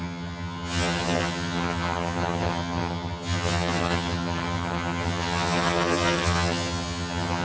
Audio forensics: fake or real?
fake